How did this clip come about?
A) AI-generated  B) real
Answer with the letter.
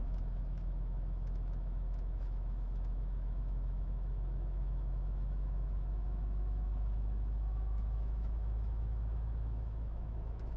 A